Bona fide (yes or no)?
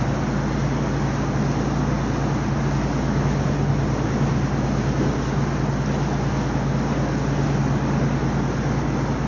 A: yes